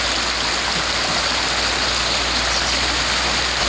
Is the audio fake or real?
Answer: real